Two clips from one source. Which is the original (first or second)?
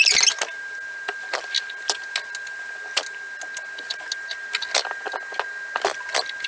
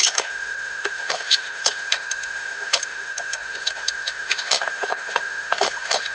first